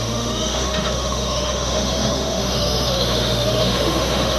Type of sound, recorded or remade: remade